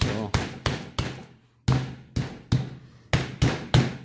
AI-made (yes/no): no